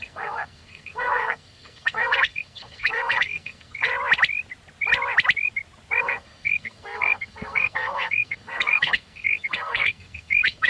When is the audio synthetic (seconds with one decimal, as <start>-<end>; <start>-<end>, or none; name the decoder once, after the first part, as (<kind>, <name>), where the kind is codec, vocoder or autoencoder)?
0.0-3.9 (codec, SNAC); 6.0-10.7